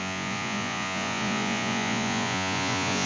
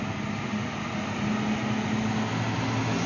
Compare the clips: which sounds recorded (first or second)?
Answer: second